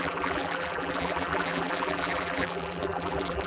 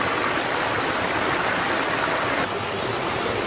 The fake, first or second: first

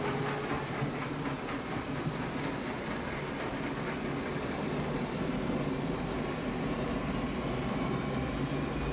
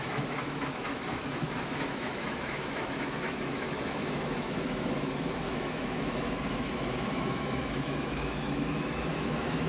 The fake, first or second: second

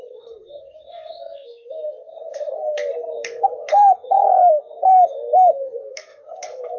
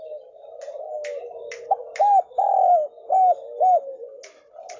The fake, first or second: first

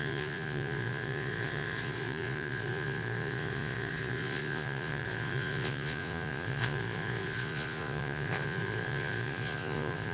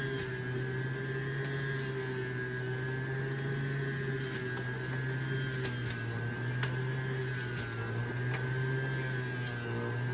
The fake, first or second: first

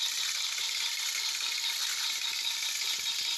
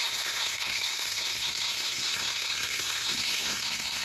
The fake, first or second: second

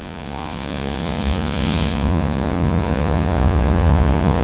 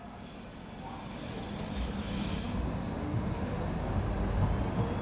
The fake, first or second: first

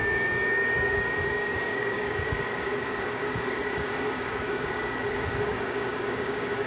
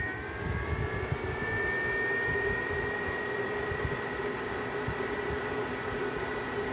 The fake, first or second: first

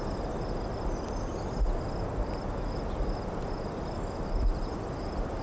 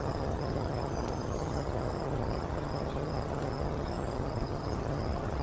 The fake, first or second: second